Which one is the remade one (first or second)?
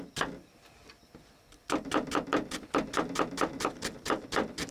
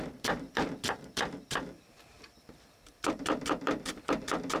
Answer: second